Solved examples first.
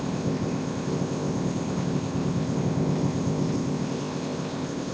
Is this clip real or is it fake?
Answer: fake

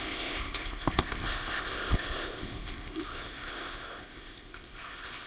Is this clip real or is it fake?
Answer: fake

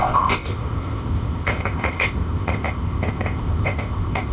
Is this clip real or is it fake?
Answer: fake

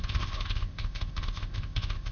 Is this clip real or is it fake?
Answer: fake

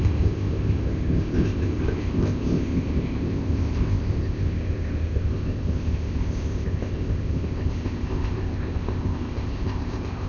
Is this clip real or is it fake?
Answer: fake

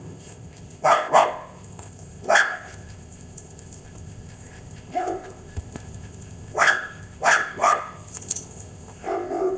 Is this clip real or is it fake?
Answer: fake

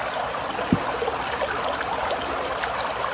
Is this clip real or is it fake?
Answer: real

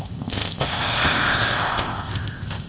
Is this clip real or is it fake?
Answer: fake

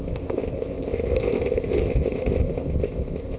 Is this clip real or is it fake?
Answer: fake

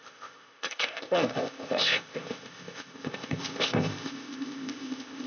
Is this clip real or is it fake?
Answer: fake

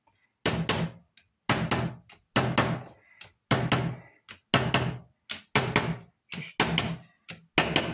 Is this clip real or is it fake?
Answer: real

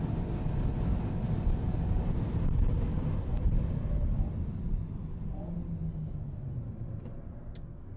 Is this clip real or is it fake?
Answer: real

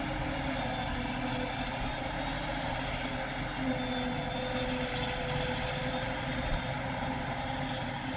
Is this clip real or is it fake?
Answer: real